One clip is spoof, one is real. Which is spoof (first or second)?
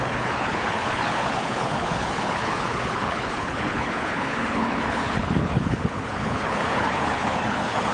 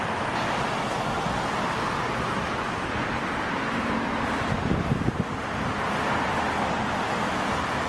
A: first